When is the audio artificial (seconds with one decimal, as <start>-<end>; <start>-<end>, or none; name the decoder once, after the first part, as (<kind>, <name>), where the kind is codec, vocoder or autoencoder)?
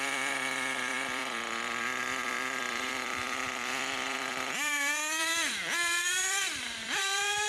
0.0-1.2 (vocoder, BigVGAN v2); 2.3-7.5